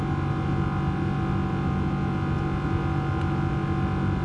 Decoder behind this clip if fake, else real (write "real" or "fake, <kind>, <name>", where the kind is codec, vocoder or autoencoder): real